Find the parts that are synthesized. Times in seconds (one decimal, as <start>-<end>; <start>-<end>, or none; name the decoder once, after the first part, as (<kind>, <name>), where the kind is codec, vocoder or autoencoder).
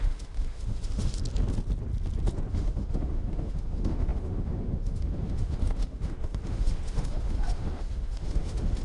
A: 0.0-1.2 (autoencoder, DAC-VAE); 2.5-8.8